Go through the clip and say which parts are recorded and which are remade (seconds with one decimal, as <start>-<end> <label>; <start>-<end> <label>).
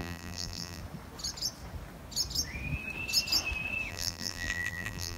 0.0-0.8 remade; 0.8-3.9 recorded; 3.9-5.2 remade